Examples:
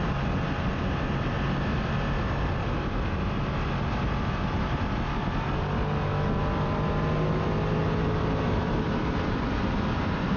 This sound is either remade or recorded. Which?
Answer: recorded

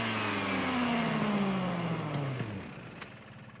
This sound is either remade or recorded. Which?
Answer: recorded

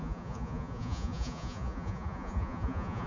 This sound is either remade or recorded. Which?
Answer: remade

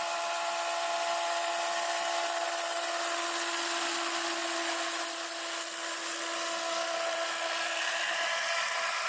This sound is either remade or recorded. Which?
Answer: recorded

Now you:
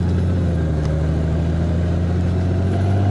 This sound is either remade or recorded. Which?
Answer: recorded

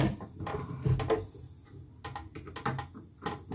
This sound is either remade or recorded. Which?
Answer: recorded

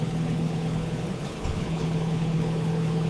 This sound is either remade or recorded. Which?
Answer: remade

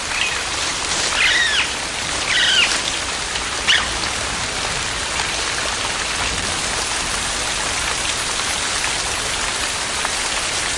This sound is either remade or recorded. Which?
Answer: recorded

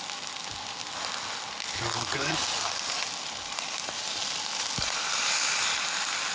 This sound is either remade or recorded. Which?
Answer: recorded